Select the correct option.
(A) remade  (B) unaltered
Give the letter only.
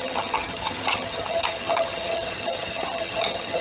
A